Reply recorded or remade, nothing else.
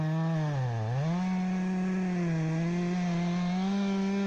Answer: recorded